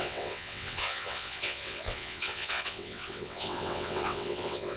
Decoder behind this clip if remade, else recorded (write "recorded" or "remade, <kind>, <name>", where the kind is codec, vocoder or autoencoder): remade, vocoder, WaveNeXt